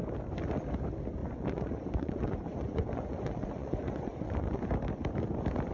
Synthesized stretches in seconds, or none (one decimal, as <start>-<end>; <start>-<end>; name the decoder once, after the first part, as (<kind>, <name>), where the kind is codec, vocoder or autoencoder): 1.2-4.6 (vocoder, Vocos)